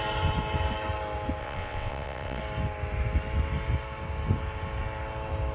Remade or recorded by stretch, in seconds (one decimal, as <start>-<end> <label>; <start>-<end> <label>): 0.0-1.4 recorded; 1.4-2.4 remade; 2.4-5.5 recorded